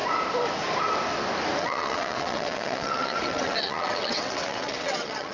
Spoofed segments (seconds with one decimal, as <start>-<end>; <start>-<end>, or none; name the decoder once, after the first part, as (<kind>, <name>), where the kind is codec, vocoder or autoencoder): 1.6-5.3 (vocoder, WaveNeXt)